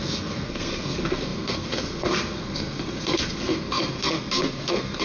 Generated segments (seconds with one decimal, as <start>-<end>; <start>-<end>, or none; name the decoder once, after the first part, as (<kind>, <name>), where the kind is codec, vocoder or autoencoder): 0.0-5.0 (codec, SNAC)